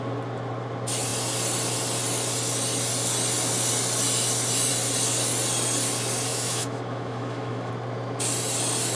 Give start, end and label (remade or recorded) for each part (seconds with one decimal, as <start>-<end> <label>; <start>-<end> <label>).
0.0-6.3 recorded; 6.3-7.7 remade; 7.7-9.0 recorded